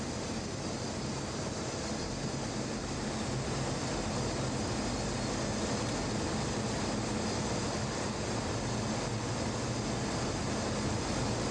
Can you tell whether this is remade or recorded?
recorded